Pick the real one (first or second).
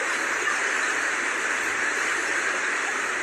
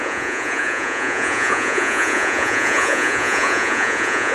first